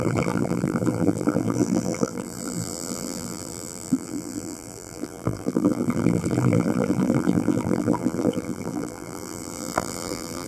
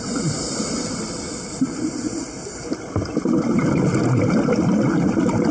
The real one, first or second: second